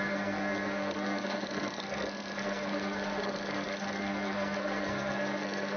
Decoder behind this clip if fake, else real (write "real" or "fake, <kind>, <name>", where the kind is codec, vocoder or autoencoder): fake, codec, SNAC